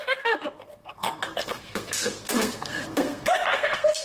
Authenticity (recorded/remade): remade